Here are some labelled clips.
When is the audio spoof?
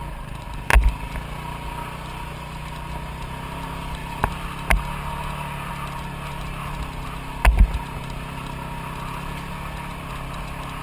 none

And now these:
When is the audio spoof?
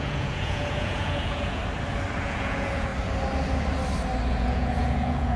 0.0-1.6 (vocoder, Vocos); 2.2-2.9; 4.3-5.4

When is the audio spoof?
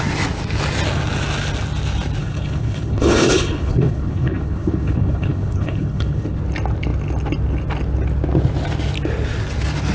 2.2-6.4 (codec, HILCodec)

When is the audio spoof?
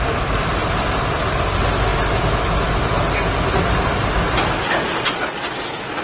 none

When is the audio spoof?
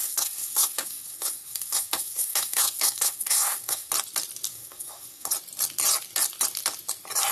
0.0-3.9 (codec, SNAC); 4.5-5.3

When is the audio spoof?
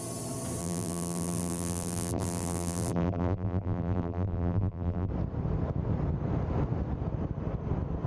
0.6-5.1 (vocoder, BigVGAN v2)